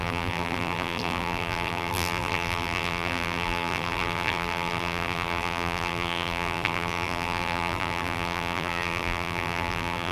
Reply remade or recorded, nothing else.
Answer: remade